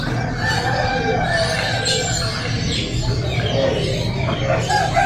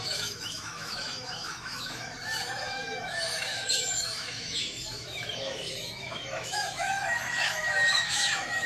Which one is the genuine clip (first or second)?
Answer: first